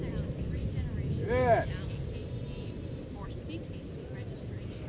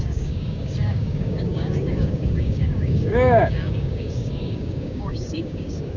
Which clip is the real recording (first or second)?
first